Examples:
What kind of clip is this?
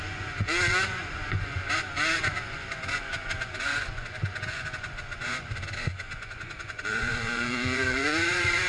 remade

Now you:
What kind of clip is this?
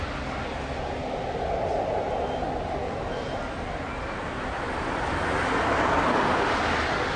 recorded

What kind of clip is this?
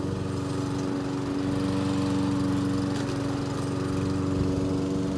recorded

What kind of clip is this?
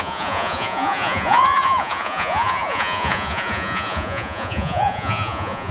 remade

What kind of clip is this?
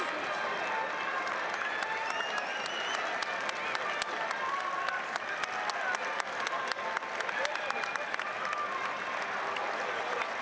recorded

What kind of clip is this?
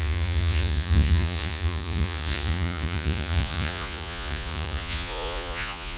remade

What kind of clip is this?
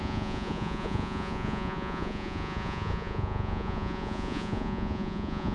remade